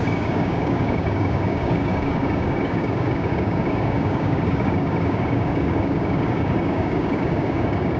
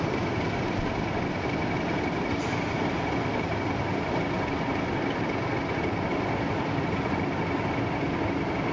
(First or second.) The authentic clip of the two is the second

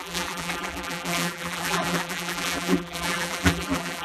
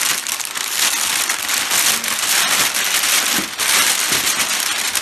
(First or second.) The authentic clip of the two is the second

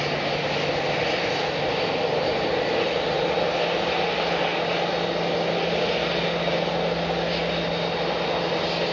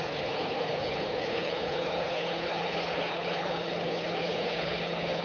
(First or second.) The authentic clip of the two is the first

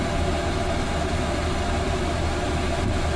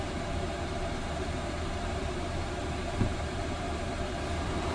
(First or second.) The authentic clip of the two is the first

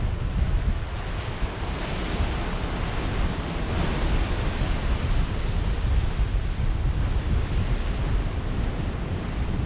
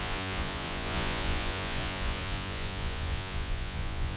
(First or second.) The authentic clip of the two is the first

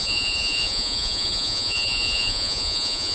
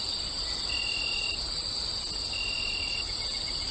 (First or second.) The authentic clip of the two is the second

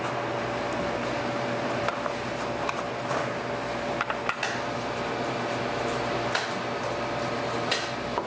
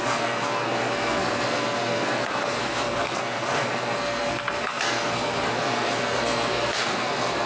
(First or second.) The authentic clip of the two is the first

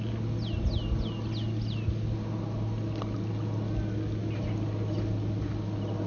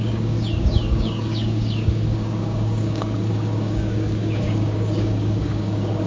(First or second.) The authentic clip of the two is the first